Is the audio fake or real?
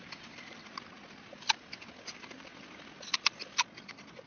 real